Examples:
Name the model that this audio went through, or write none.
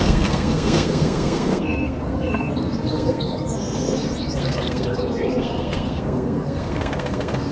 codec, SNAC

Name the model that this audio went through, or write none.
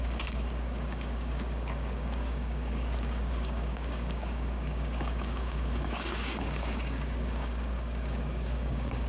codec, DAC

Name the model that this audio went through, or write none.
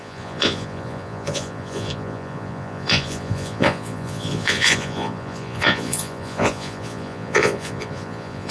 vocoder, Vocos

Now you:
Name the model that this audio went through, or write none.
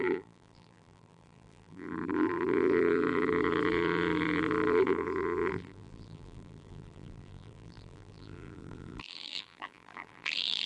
vocoder, BigVGAN v2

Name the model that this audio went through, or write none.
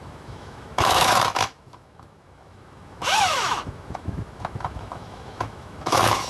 autoencoder, DAC-VAE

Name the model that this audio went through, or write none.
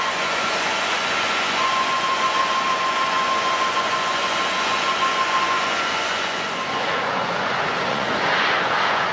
vocoder, Vocos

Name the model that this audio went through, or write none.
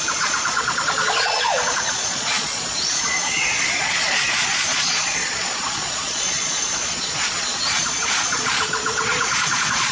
vocoder, Vocos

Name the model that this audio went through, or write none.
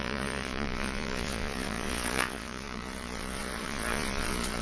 vocoder, Vocos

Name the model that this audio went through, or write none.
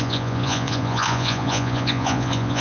vocoder, Vocos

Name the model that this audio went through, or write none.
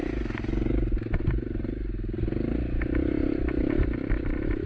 none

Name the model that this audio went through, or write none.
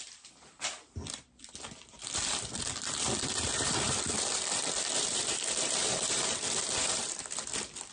vocoder, BigVGAN v2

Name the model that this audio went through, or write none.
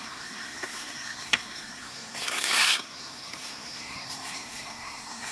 codec, SNAC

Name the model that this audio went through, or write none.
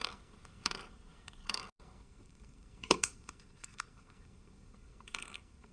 codec, SNAC